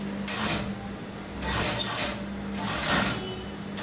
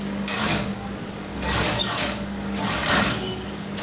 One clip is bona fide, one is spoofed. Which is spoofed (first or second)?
second